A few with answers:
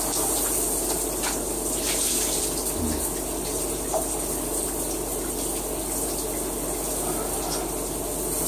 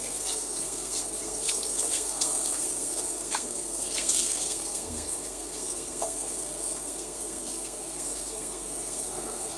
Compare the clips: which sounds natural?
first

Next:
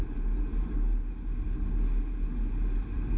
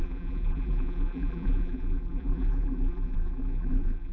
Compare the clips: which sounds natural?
first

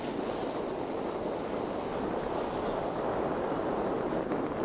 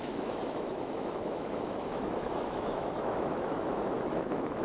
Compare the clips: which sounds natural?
first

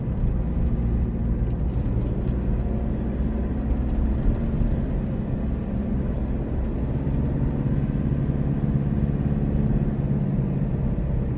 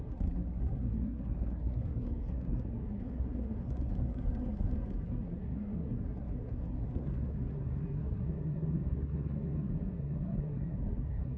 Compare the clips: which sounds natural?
first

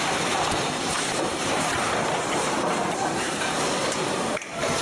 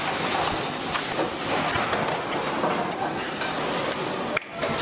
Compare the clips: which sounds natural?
second